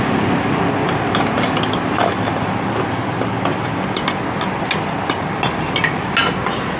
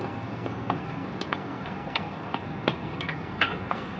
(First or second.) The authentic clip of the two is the first